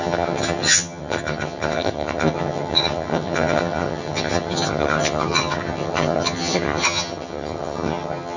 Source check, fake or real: fake